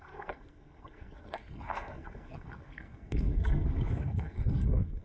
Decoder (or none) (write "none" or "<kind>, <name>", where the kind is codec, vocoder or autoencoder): codec, SNAC